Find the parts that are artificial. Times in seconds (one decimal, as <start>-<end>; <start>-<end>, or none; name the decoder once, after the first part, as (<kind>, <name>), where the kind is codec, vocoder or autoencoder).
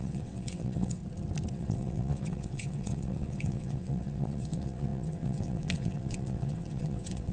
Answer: 0.0-1.0 (vocoder, WaveNeXt); 1.5-7.3